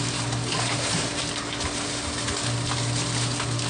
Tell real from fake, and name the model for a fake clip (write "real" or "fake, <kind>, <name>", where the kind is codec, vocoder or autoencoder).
real